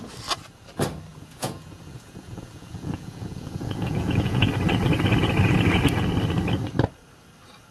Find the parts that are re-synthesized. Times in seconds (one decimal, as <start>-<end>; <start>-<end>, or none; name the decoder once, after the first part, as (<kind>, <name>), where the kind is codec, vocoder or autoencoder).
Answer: 1.1-4.5 (vocoder, Vocos)